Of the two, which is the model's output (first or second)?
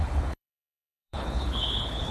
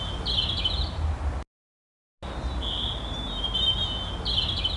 first